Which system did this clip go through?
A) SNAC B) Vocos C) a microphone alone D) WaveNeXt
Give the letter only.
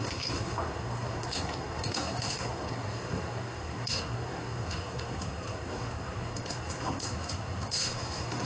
A